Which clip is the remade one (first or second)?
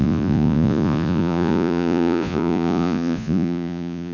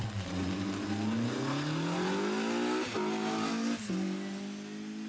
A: first